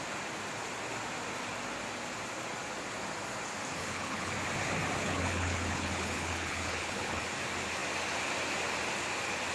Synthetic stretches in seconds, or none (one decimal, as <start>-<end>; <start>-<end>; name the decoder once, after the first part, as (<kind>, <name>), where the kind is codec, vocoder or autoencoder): 3.8-4.3 (codec, HILCodec); 5.0-7.2